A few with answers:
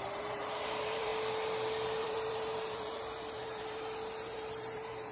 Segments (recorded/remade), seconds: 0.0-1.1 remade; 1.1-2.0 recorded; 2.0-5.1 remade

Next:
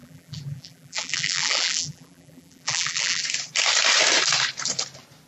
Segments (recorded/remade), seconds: 0.0-3.2 remade; 3.2-5.3 recorded

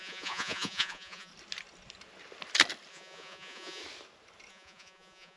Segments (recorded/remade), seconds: 0.0-1.3 remade; 1.3-2.9 recorded; 2.9-3.8 remade; 3.8-4.5 recorded; 4.5-5.4 remade

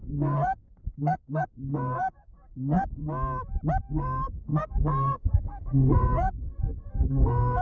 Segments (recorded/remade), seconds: 0.0-3.0 remade; 3.0-3.8 recorded; 3.8-7.6 remade

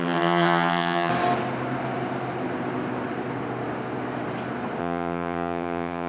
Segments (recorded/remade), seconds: 0.0-1.1 remade; 1.1-4.8 recorded; 4.8-6.1 remade

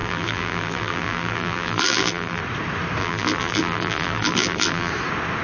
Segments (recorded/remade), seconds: 0.0-2.4 remade; 2.4-3.0 recorded; 3.0-4.9 remade; 4.9-5.4 recorded

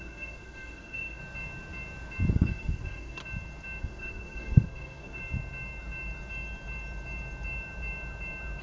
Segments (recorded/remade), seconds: 0.0-1.2 remade; 1.2-2.3 recorded; 2.3-3.2 remade; 3.2-3.8 recorded; 3.8-5.2 remade; 5.2-8.6 recorded

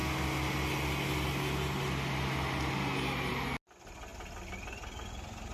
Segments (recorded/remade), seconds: 0.0-5.5 recorded